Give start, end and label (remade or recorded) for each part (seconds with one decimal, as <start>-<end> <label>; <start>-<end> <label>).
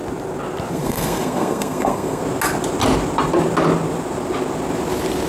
0.0-0.7 recorded; 0.7-2.2 remade; 2.2-5.3 recorded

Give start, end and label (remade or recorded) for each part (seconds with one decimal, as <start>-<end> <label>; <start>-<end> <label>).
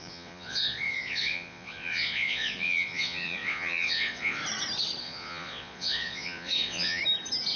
0.0-4.4 remade; 4.4-5.0 recorded; 5.0-7.0 remade; 7.0-7.6 recorded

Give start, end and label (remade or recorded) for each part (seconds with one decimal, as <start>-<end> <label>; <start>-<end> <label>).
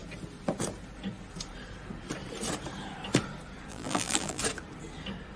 0.0-3.7 recorded; 3.7-4.4 remade; 4.4-5.4 recorded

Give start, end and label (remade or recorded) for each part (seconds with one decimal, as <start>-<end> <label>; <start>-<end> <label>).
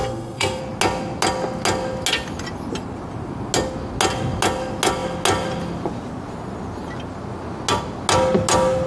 0.0-0.6 remade; 0.6-8.9 recorded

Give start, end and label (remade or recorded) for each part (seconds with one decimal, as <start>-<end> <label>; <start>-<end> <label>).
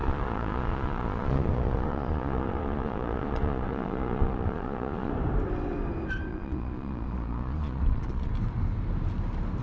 0.0-5.1 remade; 5.1-6.3 recorded; 6.3-8.3 remade; 8.3-9.6 recorded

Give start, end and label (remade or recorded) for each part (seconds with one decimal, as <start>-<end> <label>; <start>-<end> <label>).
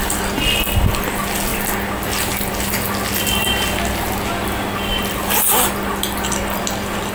0.0-7.1 recorded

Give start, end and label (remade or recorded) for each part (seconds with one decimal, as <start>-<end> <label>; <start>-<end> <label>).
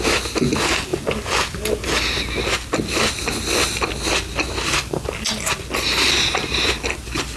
0.0-7.4 recorded